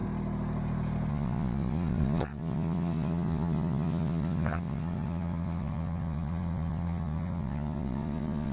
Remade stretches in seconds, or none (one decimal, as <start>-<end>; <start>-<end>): 1.1-8.5